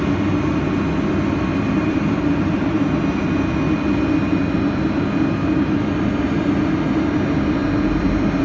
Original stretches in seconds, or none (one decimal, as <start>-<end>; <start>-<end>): 0.0-1.5; 3.0-8.4